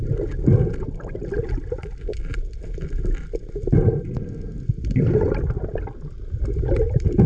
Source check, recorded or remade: recorded